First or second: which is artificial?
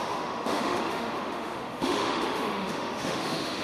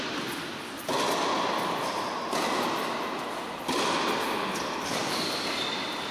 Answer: first